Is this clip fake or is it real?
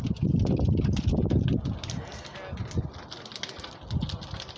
real